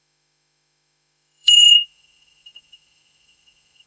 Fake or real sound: fake